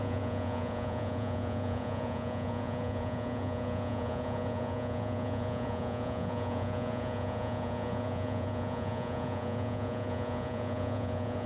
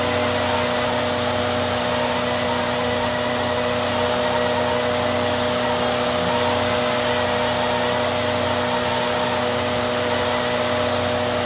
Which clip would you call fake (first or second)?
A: first